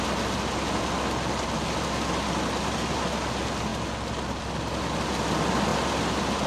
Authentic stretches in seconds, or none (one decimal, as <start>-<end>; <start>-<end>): 0.0-5.7